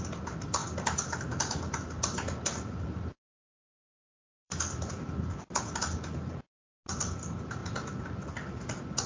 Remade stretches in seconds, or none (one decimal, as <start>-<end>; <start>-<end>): 0.6-4.9